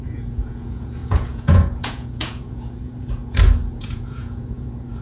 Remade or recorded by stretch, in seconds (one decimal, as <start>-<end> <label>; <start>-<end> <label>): 0.0-3.2 remade; 3.2-3.8 recorded; 3.8-5.0 remade